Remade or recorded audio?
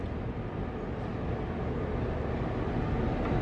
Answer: recorded